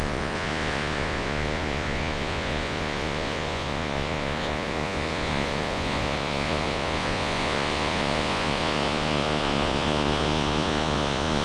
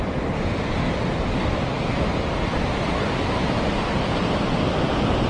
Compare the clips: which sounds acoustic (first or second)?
second